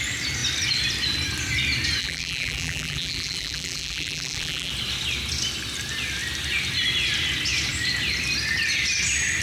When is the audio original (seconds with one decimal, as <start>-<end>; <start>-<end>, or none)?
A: 0.0-2.0; 4.7-9.4